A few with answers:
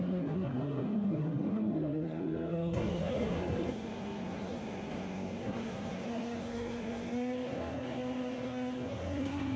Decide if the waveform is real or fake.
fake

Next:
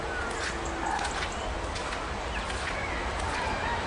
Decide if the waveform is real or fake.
real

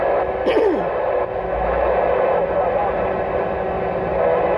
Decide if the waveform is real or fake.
real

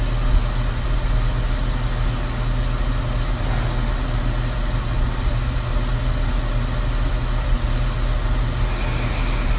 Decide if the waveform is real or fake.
real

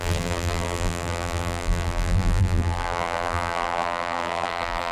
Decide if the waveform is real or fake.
fake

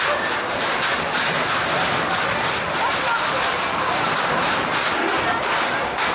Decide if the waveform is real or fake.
real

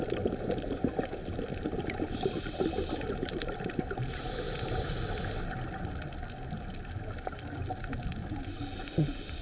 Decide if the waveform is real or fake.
real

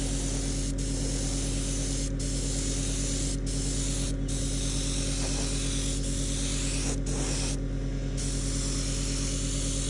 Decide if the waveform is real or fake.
real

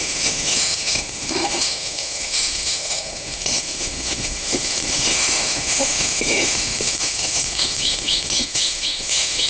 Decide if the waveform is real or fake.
fake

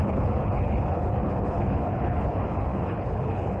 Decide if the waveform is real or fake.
fake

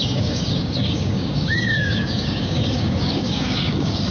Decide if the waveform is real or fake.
fake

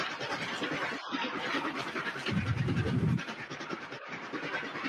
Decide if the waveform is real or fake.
fake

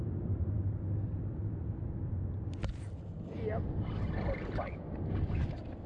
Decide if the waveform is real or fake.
real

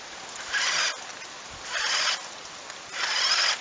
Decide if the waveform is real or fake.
real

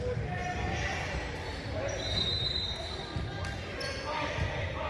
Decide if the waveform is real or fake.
real